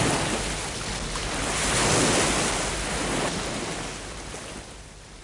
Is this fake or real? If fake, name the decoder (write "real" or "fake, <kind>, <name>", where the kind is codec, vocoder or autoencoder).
real